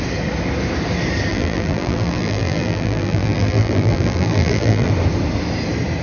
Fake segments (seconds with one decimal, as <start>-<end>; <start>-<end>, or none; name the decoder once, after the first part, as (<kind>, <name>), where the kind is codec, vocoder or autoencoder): 1.3-4.9 (vocoder, BigVGAN v2)

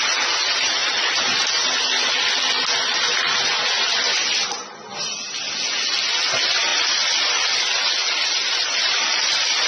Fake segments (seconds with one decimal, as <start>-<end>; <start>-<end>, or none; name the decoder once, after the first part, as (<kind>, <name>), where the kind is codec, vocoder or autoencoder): 6.7-7.6 (vocoder, BigVGAN v2); 8.0-9.7

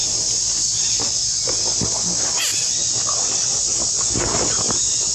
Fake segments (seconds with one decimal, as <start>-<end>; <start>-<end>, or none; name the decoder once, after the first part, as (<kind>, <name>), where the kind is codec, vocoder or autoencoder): 0.0-0.9 (vocoder, BigVGAN v2); 2.5-3.6

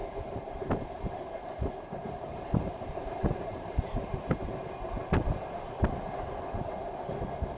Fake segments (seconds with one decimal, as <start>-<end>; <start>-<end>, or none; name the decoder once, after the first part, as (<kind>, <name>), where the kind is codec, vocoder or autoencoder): 0.0-4.2 (vocoder, BigVGAN v2)

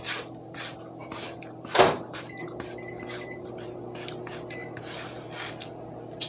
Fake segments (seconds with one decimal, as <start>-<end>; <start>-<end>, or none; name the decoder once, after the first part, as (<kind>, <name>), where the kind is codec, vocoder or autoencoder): 1.0-3.8 (vocoder, BigVGAN v2)

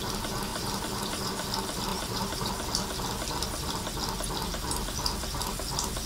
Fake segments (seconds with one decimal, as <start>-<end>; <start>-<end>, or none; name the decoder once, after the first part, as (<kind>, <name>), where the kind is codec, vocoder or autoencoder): 0.5-1.3 (vocoder, BigVGAN v2); 1.9-2.5

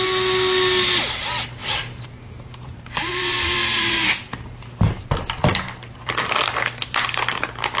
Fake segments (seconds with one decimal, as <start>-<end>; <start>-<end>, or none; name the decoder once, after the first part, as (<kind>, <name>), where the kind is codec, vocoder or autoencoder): 1.6-4.2 (vocoder, BigVGAN v2)